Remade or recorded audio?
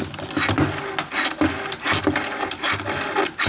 recorded